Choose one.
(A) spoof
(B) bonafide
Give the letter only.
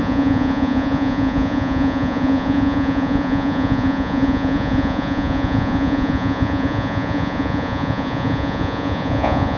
A